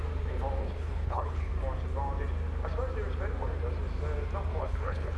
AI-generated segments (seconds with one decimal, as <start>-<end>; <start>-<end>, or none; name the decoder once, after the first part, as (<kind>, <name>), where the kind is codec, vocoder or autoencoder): 0.6-1.5 (codec, HILCodec); 4.6-5.2